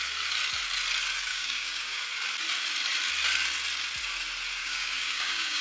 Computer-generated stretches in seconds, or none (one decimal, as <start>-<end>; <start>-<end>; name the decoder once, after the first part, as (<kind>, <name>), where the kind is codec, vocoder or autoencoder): 1.3-2.0 (codec, DAC); 4.6-5.6